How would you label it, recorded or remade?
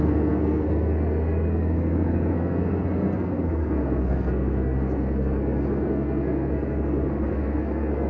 remade